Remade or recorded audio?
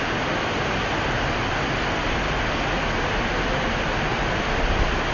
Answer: recorded